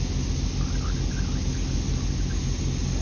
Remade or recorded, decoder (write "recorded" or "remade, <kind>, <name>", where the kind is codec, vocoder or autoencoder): recorded